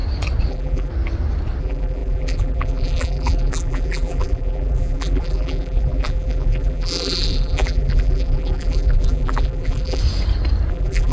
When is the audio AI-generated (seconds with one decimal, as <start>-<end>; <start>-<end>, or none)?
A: 0.5-0.9; 1.6-10.0; 10.7-11.1